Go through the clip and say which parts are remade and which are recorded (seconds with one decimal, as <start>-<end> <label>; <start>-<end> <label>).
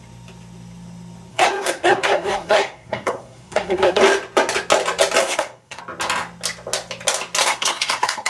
0.0-1.3 recorded; 1.3-4.0 remade; 4.0-5.2 recorded; 5.2-5.8 remade; 5.8-7.4 recorded; 7.4-8.3 remade